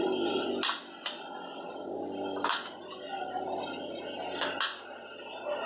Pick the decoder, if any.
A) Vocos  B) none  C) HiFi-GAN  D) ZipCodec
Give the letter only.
B